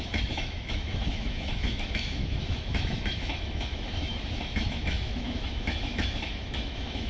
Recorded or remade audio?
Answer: remade